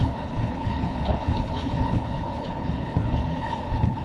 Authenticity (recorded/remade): remade